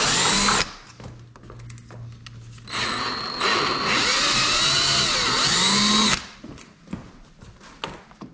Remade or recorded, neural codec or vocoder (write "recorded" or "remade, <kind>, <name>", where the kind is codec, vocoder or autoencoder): recorded